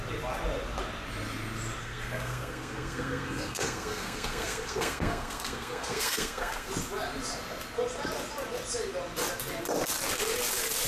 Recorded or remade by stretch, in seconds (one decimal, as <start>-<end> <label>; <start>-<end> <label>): 0.0-1.8 recorded; 1.8-6.7 remade; 6.7-10.9 recorded